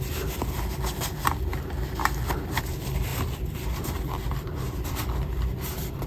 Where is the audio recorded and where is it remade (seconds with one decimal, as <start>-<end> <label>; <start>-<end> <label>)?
0.0-3.1 recorded; 3.1-6.1 remade